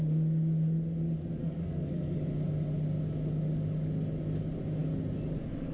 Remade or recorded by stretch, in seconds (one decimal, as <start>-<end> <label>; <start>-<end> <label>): 0.0-1.4 recorded; 1.4-2.2 remade; 2.2-5.7 recorded